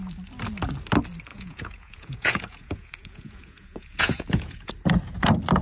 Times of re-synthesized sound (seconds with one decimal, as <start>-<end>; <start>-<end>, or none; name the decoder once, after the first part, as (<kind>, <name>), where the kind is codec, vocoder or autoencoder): 1.3-4.7 (vocoder, Vocos)

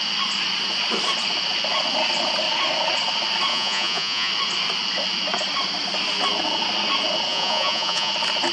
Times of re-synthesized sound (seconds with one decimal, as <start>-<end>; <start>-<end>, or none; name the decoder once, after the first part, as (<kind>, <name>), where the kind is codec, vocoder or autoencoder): 3.5-4.3 (vocoder, Vocos); 7.3-8.1

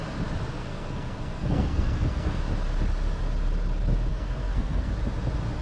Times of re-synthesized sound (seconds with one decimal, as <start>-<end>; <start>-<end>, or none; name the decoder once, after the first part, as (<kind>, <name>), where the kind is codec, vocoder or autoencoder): 0.6-2.4 (codec, SNAC); 4.1-4.9